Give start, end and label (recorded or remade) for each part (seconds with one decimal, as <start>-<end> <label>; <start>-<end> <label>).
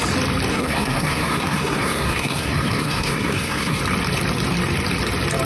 0.0-0.5 recorded; 0.5-3.8 remade; 3.8-5.5 recorded